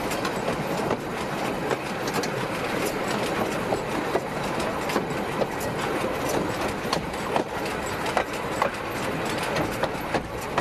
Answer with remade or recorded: recorded